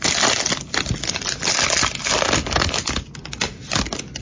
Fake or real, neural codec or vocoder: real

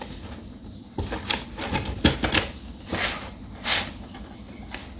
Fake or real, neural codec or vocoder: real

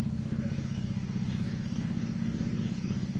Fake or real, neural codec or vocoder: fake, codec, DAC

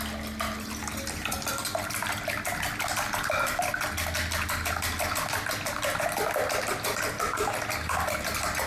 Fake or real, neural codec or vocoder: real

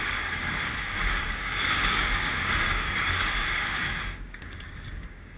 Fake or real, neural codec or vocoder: fake, codec, DAC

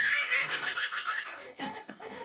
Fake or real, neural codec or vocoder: fake, codec, DAC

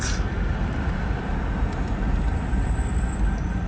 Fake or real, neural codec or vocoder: real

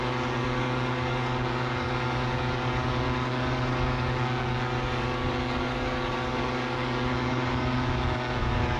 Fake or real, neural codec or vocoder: fake, codec, DAC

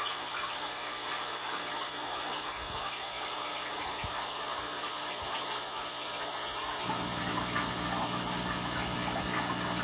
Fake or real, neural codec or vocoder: real